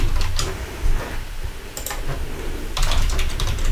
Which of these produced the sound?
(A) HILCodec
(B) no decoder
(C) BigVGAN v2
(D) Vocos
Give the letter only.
C